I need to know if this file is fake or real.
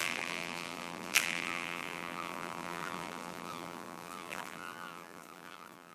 fake